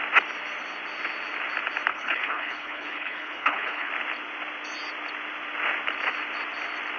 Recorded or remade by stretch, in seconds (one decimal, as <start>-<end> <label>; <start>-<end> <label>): 0.0-1.9 recorded; 1.9-3.9 remade; 3.9-7.0 recorded